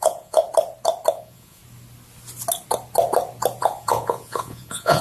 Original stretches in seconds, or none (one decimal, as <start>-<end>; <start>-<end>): 0.4-1.1; 1.6-3.6